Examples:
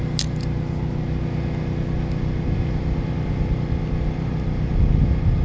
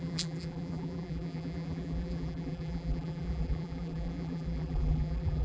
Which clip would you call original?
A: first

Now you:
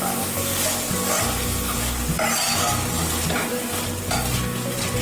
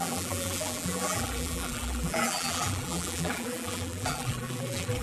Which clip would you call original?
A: first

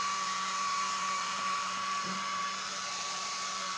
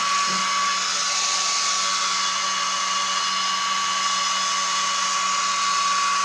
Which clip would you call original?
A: second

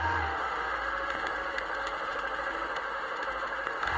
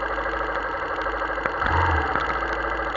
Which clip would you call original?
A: second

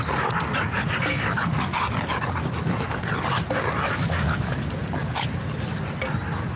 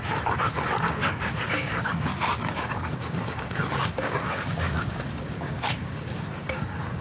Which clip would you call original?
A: first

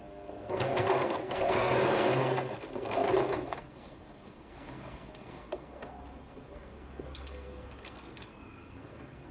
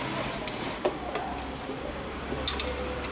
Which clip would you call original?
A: second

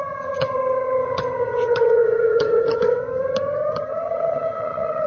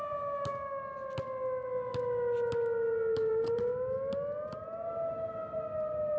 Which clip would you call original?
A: second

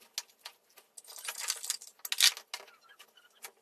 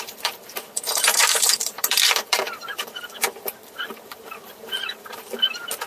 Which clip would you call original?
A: first